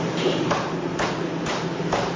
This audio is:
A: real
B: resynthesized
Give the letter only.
B